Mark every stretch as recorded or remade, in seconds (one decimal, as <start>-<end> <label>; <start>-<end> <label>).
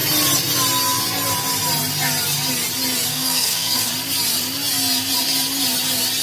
0.0-3.1 recorded; 3.1-3.9 remade; 3.9-6.2 recorded